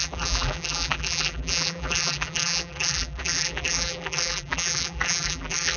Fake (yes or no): yes